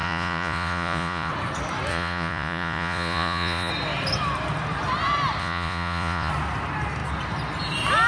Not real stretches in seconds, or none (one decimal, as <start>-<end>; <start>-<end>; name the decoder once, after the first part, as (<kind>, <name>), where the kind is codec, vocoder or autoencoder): 0.0-1.3 (vocoder, Vocos); 1.9-3.7; 5.4-6.3